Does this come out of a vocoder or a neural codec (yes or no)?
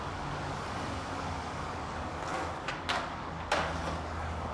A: yes